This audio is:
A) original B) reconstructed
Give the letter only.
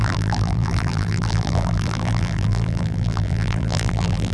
B